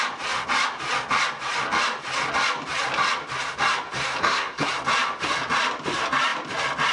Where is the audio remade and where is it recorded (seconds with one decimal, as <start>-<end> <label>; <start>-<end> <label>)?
0.0-4.2 recorded; 4.2-4.7 remade; 4.7-6.9 recorded